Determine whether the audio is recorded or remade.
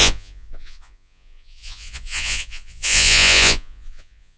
remade